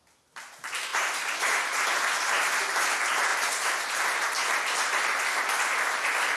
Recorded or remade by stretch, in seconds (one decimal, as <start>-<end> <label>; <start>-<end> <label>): 0.0-0.9 recorded; 0.9-2.8 remade; 2.8-3.3 recorded; 3.3-4.0 remade; 4.0-6.4 recorded